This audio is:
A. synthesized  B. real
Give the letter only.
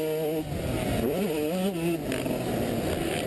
B